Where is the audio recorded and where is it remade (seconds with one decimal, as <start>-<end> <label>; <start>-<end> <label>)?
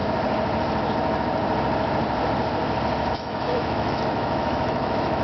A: 0.0-3.1 recorded; 3.1-5.2 remade